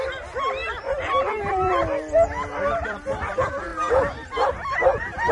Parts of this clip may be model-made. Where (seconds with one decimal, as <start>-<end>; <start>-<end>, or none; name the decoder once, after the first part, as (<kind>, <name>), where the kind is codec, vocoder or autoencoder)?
0.0-3.7 (vocoder, BigVGAN v2); 4.5-5.3